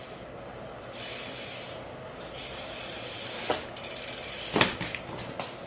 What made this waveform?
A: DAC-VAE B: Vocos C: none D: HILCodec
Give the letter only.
C